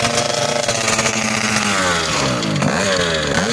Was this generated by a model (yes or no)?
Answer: no